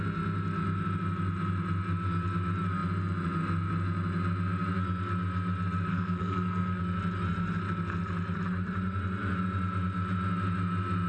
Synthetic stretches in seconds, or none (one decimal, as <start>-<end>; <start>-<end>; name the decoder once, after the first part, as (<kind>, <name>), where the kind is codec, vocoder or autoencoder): 5.9-6.8 (codec, SNAC)